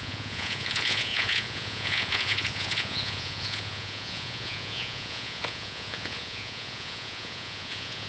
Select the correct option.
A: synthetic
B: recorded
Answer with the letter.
A